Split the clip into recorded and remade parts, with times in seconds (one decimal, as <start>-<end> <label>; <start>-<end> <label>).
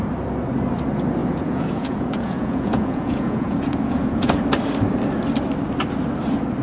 0.0-1.2 recorded; 1.2-4.4 remade; 4.4-6.6 recorded